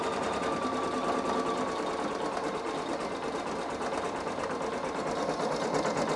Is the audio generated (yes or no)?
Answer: no